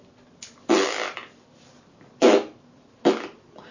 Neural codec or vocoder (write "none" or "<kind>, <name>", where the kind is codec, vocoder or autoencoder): none